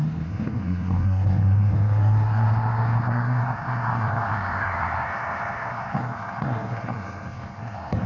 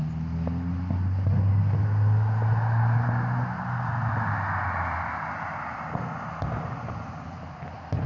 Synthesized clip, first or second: first